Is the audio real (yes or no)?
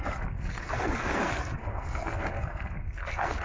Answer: no